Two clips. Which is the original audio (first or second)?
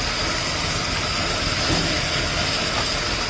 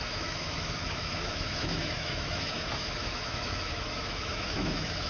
first